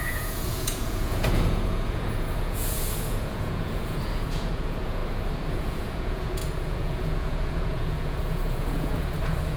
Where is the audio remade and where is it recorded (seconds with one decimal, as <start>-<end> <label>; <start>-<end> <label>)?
0.0-5.0 remade; 5.0-5.5 recorded; 5.5-9.6 remade